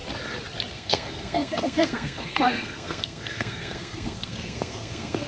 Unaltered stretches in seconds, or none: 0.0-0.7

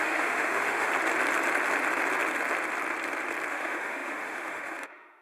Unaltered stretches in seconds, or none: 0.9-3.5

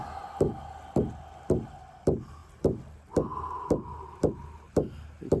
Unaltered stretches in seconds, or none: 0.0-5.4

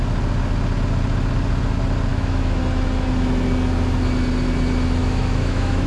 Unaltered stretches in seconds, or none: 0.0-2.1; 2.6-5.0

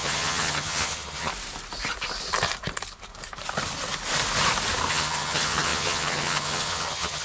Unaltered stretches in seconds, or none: 1.3-4.9

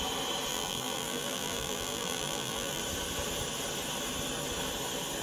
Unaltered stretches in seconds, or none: 0.0-0.5; 2.8-5.2

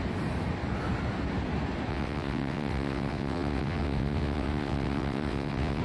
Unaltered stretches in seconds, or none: 0.0-1.9